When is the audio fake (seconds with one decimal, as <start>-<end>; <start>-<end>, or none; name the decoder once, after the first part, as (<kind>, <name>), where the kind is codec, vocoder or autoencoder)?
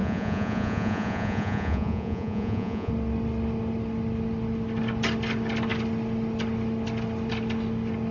0.0-2.9 (vocoder, Vocos)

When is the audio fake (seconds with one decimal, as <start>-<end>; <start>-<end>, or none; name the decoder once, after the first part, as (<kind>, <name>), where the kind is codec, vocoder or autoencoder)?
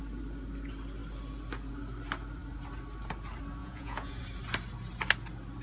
3.6-4.2 (vocoder, Vocos)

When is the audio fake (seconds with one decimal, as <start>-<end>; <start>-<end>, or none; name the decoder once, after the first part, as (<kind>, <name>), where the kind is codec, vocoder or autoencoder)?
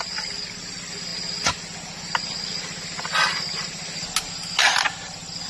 none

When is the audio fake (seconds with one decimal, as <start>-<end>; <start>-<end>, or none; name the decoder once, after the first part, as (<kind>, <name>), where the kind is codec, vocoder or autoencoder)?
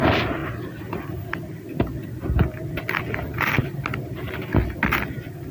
0.4-1.2 (vocoder, BigVGAN v2)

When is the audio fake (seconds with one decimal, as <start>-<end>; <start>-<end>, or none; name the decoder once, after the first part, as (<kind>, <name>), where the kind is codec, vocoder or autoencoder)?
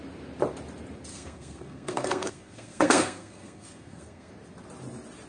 1.1-4.3 (codec, SNAC)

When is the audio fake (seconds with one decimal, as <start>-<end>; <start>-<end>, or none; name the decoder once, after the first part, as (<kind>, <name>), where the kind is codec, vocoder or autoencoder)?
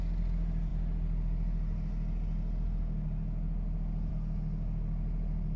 none